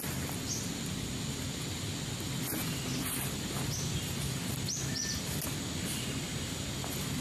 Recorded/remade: recorded